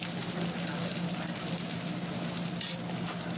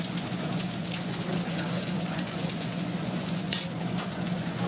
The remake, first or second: second